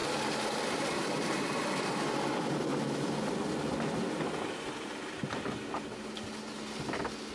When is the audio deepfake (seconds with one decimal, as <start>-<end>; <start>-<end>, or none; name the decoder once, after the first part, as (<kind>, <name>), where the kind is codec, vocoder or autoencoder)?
none